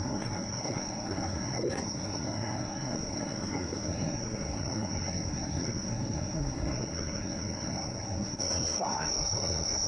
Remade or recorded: remade